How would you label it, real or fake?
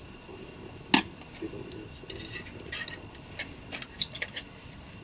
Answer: real